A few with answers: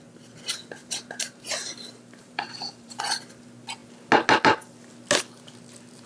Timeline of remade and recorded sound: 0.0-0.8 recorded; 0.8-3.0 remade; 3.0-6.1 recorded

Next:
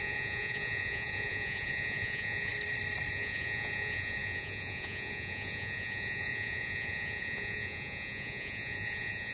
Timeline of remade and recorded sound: 0.0-2.5 remade; 2.5-3.1 recorded; 3.1-9.3 remade

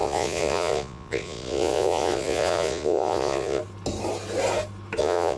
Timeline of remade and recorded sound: 0.0-3.6 remade; 3.6-5.0 recorded; 5.0-5.4 remade